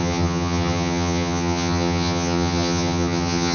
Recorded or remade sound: remade